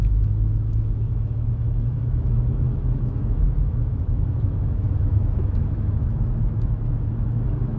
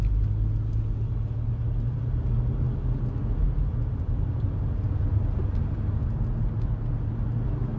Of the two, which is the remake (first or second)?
first